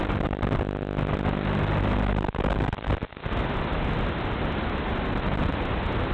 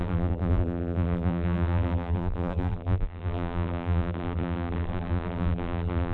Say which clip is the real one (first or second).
first